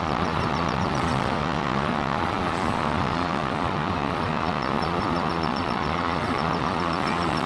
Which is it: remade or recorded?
remade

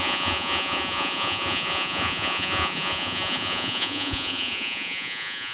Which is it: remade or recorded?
remade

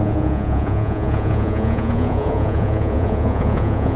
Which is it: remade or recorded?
remade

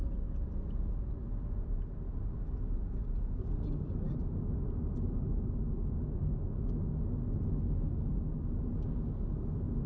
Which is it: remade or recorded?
recorded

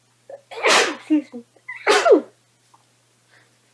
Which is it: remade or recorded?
recorded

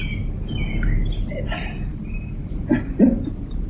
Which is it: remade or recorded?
recorded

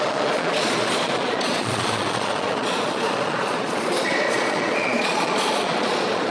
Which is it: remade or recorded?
remade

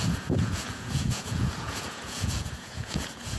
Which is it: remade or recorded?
remade